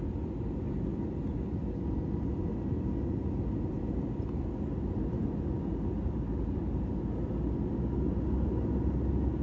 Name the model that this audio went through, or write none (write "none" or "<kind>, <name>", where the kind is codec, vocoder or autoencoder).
none